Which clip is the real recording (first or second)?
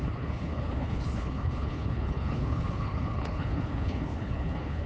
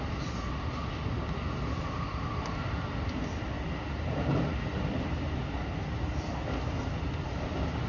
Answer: second